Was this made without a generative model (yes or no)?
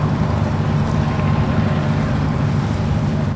no